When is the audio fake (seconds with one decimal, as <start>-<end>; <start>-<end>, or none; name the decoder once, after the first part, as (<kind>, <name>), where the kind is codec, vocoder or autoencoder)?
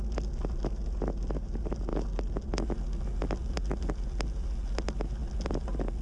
none